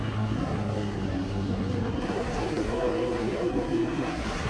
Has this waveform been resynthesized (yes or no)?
yes